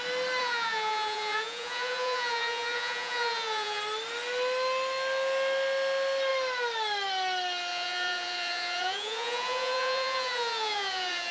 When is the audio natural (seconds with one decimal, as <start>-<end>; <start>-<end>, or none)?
0.0-0.4; 3.8-7.7